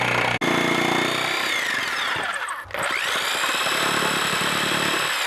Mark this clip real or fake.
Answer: real